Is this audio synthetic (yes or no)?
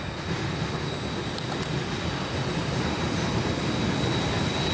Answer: no